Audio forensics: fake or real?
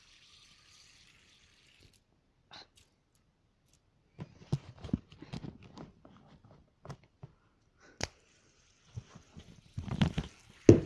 real